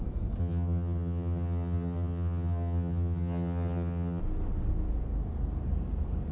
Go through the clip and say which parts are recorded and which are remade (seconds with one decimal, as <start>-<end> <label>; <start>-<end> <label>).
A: 0.0-0.4 recorded; 0.4-4.2 remade; 4.2-6.3 recorded